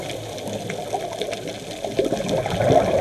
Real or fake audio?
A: real